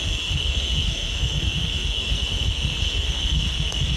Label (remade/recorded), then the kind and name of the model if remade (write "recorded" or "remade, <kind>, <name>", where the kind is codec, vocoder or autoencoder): remade, codec, SNAC